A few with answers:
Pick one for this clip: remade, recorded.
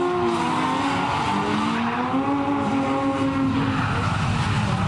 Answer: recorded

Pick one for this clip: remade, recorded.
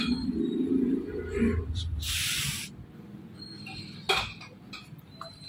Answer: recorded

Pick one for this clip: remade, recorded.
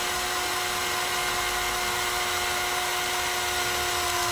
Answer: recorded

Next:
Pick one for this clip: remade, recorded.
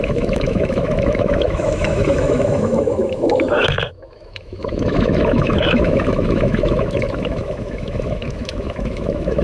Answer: remade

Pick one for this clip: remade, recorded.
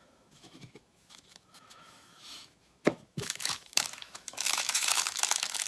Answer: remade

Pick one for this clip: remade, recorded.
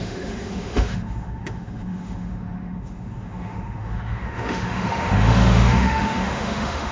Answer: remade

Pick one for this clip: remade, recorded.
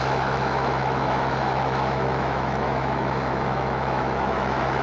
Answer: remade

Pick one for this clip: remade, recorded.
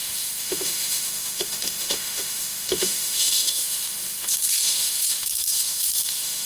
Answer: remade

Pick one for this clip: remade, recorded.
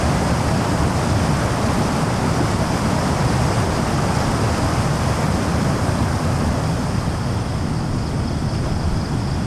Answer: recorded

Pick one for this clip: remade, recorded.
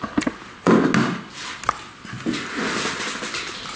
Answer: recorded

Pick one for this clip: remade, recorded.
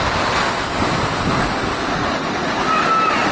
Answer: recorded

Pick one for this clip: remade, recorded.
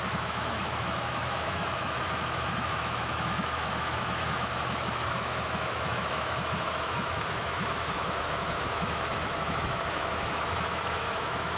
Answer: remade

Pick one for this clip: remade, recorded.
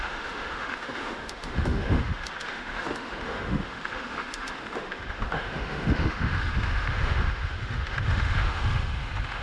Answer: remade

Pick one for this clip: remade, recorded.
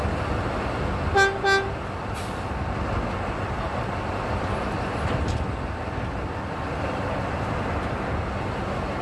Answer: recorded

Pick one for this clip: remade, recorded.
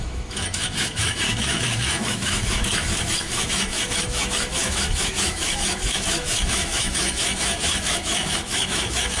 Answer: remade